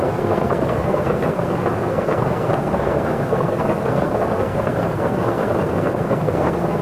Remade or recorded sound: remade